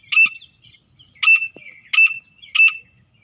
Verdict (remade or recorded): recorded